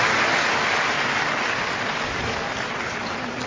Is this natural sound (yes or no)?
yes